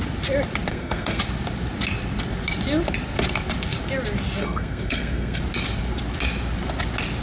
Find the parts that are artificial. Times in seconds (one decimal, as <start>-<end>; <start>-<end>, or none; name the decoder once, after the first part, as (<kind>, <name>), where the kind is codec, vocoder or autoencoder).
0.7-1.2 (codec, SNAC); 4.4-5.4